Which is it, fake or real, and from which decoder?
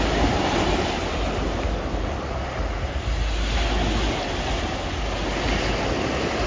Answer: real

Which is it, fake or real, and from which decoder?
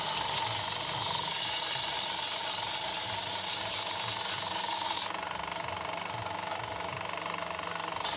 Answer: real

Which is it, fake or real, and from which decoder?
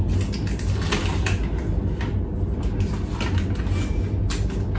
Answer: real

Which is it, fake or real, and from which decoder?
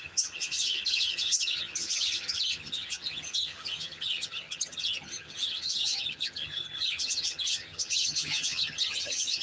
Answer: fake, vocoder, HiFi-GAN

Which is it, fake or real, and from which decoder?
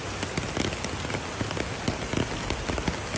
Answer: real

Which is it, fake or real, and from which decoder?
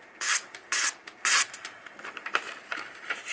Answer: real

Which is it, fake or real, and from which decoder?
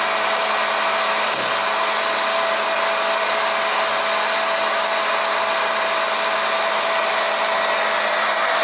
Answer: real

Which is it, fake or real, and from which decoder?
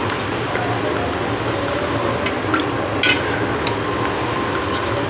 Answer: real